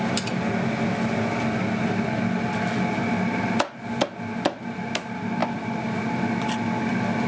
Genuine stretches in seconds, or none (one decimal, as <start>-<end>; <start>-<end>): 0.0-7.3